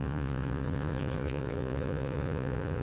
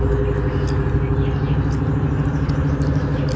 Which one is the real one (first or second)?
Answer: second